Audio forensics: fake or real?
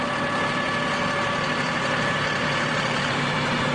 fake